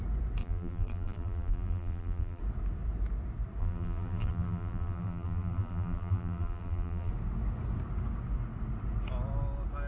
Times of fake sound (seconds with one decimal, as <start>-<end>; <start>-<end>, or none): 0.4-2.4; 3.6-7.1